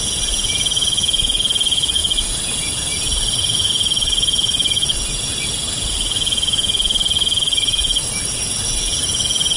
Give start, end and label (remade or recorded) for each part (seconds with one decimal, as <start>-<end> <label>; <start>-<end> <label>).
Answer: 0.0-9.6 recorded